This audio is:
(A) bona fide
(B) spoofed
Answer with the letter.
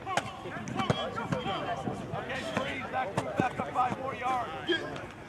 A